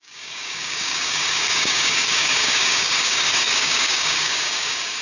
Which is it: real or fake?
fake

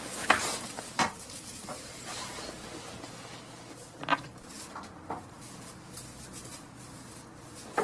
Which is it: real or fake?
real